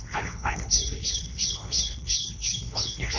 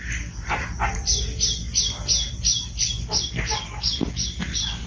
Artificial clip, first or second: first